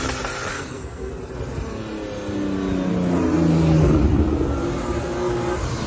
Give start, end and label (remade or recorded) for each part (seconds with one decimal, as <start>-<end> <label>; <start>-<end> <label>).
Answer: 0.0-0.5 recorded; 0.5-1.1 remade; 1.1-5.9 recorded